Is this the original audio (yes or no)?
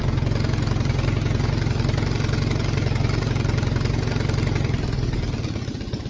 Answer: yes